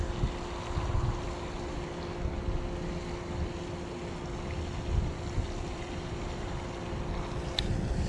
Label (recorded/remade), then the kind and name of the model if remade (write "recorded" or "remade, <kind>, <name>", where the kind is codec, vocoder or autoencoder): recorded